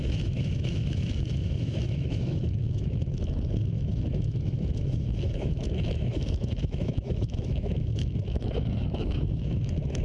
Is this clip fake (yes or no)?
yes